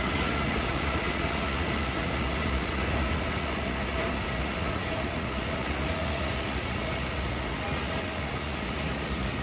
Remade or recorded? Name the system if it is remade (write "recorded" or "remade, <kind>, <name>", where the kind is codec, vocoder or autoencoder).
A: remade, vocoder, Vocos